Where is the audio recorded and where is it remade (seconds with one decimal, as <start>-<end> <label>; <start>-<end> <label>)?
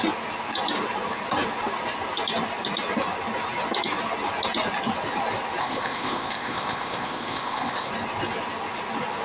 0.0-5.6 recorded; 5.6-7.9 remade; 7.9-9.2 recorded